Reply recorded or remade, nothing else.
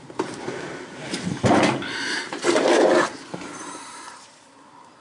remade